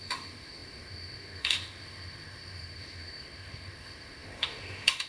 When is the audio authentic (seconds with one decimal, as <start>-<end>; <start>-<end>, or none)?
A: none